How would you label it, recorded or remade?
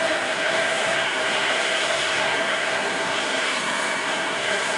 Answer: remade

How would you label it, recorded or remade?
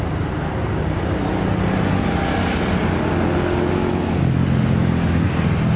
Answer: recorded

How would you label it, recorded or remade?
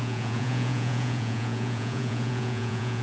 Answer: remade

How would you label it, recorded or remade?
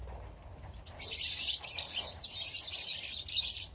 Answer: recorded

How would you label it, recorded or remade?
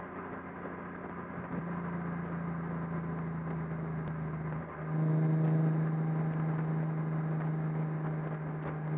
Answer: recorded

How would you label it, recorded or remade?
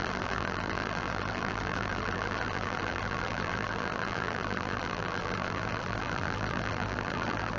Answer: remade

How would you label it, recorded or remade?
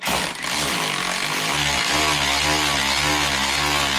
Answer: recorded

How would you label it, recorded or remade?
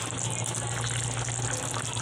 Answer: recorded